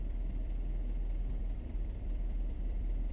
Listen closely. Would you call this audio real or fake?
fake